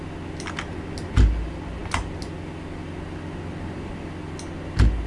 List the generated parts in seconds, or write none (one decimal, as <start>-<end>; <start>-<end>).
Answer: none